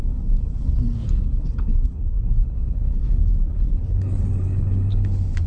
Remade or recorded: remade